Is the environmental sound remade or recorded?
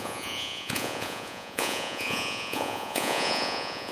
remade